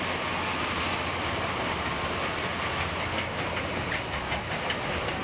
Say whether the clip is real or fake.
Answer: real